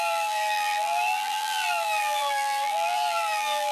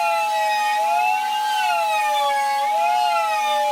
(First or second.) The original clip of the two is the second